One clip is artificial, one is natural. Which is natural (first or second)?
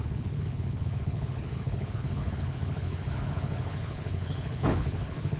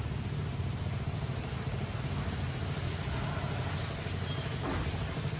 second